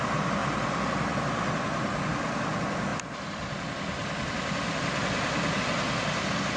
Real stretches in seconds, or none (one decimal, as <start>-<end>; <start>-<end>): 0.0-0.4; 1.1-2.9; 5.6-6.6